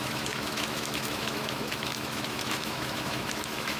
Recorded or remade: remade